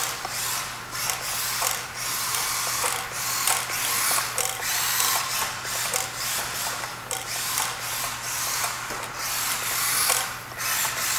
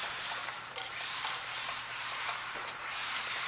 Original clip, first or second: first